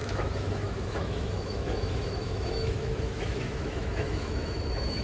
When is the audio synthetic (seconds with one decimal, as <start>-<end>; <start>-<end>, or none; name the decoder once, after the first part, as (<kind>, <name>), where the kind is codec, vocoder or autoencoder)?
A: 0.0-5.0 (autoencoder, DAC-VAE)